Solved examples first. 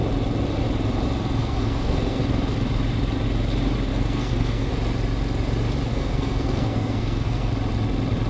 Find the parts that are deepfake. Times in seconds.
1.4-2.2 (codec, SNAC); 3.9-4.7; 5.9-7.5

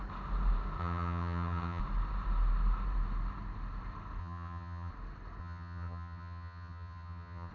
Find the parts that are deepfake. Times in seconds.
0.8-1.8 (vocoder, HiFi-GAN); 4.2-4.9; 5.4-7.5

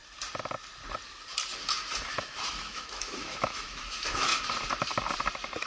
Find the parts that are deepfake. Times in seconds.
1.9-4.3 (autoencoder, DAC-VAE)

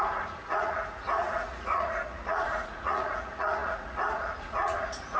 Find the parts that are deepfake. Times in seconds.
0.0-5.2 (vocoder, Vocos)

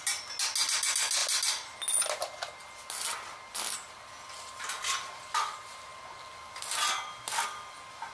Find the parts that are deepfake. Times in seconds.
none

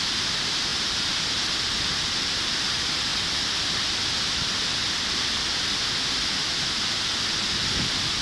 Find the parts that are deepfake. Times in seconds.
none